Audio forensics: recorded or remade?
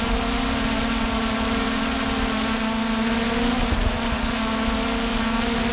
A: recorded